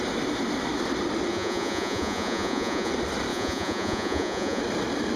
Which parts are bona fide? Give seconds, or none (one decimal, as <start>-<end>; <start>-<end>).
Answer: 0.0-1.3; 2.9-3.3; 4.6-5.2